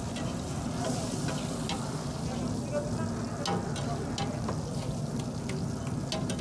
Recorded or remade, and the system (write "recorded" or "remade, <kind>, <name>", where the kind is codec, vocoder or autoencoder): recorded